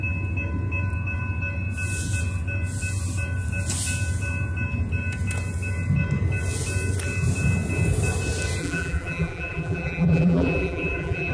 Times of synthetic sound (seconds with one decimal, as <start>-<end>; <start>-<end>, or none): 8.6-11.3